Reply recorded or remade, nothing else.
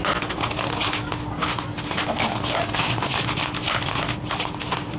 recorded